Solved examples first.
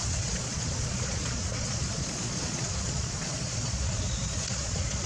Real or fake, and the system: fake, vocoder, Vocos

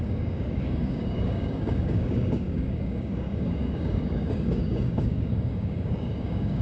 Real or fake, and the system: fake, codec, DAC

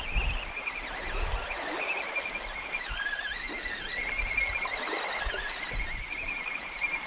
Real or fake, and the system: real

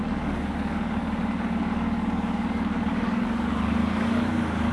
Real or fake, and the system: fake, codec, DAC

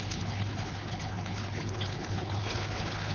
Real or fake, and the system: fake, codec, HILCodec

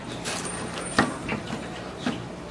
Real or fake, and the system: fake, vocoder, BigVGAN v2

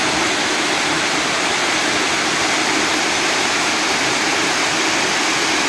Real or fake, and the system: real